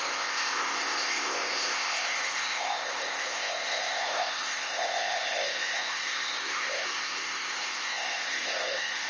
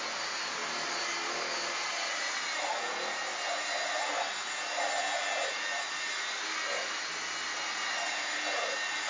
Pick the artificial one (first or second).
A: first